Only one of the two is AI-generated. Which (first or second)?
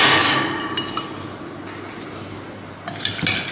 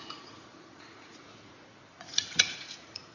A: second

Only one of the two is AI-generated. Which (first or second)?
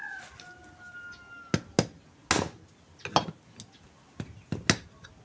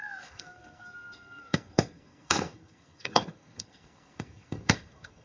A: second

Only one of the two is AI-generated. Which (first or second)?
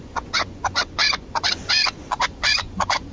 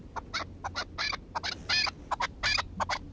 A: first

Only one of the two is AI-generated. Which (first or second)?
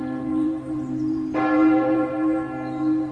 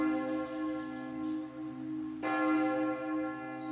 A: first